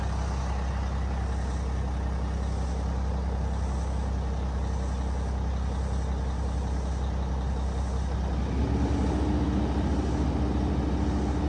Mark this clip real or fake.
real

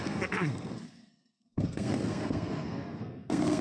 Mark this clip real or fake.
fake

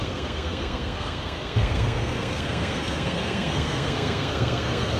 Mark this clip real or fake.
fake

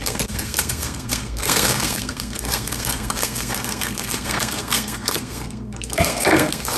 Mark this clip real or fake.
fake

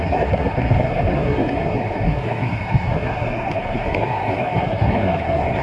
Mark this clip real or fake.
fake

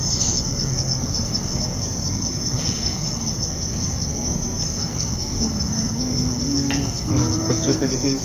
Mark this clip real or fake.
fake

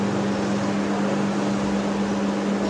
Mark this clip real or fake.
real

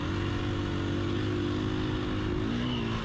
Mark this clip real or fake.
real